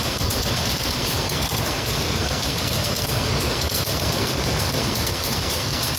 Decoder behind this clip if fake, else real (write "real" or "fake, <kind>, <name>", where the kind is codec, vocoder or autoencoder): fake, codec, SNAC